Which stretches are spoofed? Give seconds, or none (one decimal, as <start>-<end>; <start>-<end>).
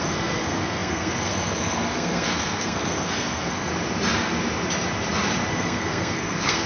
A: 0.0-3.7; 5.5-6.7